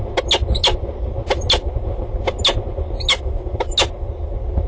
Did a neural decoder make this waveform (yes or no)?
no